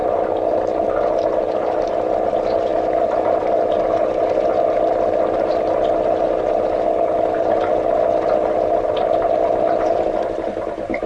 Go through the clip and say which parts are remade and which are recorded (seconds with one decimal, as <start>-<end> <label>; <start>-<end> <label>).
0.0-11.1 recorded